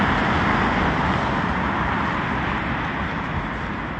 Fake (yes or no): no